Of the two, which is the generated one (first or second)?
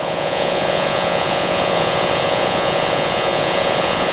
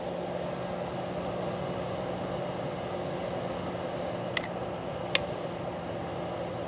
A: first